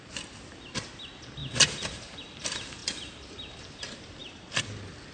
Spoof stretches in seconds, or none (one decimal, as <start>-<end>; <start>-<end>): 1.4-2.2; 2.8-3.8